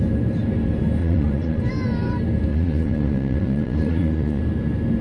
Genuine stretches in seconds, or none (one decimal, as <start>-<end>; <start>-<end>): 0.0-1.0; 1.6-2.5; 4.4-5.0